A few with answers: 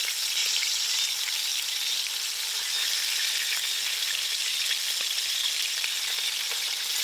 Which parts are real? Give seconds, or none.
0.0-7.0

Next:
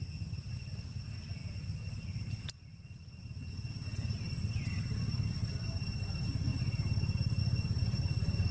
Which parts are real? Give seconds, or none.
0.0-1.4; 4.8-6.5; 7.4-8.5

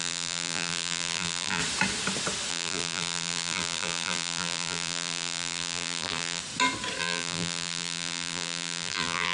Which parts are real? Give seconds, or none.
1.6-2.5; 6.4-7.0

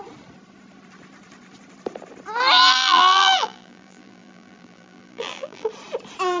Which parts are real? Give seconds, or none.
0.0-2.7; 5.7-6.4

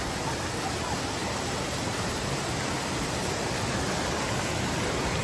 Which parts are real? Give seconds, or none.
0.0-1.2; 2.3-5.2